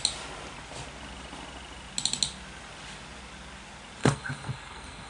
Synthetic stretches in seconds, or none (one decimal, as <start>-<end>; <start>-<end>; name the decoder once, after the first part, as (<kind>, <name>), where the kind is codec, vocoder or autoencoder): 4.0-5.1 (codec, SNAC)